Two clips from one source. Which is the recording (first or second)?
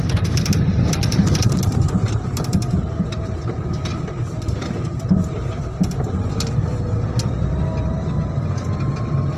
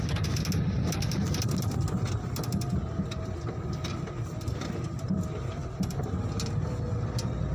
second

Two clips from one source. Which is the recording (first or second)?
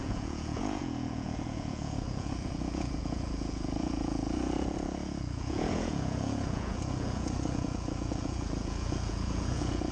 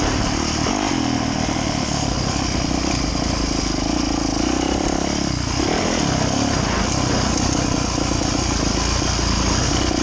second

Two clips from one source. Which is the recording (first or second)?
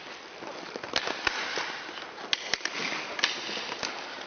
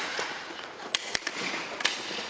first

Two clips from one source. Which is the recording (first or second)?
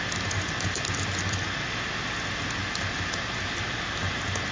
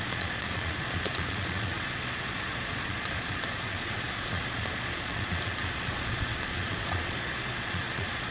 first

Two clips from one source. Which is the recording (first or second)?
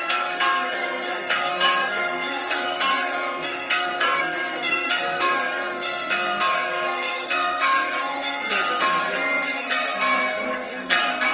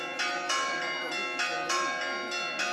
second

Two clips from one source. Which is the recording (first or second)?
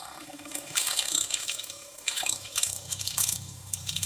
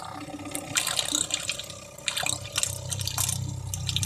second